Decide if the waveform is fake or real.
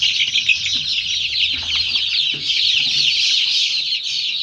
real